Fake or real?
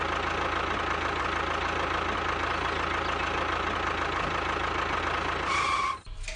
real